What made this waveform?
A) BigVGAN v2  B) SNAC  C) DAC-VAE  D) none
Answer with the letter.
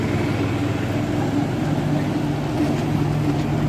D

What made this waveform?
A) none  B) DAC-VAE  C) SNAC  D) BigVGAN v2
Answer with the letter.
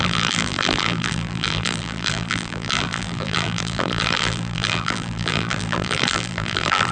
D